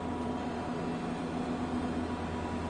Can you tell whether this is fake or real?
real